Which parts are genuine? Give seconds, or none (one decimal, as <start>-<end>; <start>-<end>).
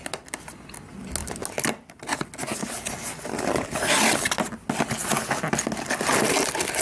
0.0-6.8